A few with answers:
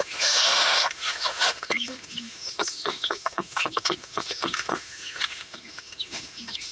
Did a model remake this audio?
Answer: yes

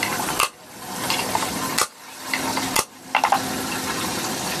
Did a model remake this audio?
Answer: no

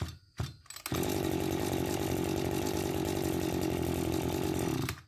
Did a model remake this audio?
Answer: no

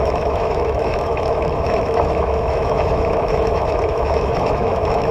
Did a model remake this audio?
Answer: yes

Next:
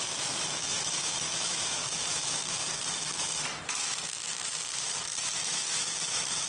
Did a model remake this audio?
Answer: yes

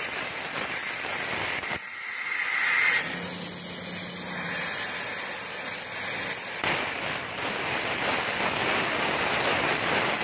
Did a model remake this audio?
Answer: no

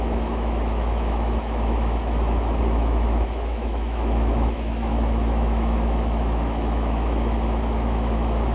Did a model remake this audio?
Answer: yes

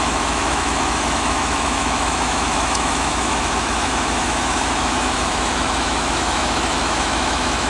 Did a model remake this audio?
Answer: yes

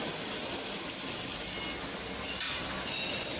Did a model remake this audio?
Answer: no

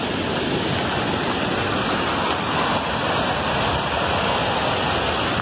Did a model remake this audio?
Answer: no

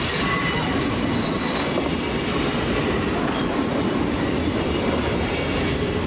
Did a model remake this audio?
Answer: no